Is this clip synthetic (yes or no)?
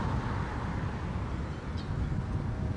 no